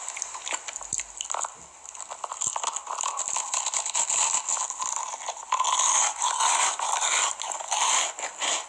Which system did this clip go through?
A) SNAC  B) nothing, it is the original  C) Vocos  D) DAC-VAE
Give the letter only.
B